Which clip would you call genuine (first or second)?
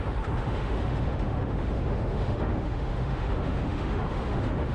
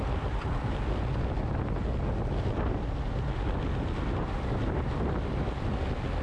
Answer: second